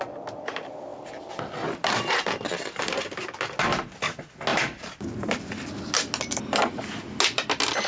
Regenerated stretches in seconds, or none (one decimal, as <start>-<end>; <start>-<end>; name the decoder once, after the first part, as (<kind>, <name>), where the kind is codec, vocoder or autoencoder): 4.5-5.1 (vocoder, BigVGAN v2)